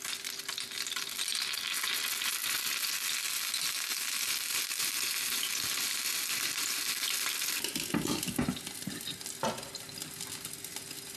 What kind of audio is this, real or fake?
real